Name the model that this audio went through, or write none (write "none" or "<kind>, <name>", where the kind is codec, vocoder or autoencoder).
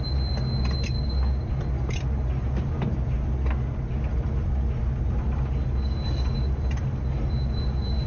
none